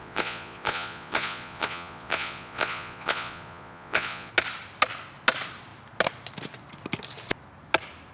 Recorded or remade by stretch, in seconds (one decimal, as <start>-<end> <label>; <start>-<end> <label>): 0.0-4.3 remade; 4.3-8.1 recorded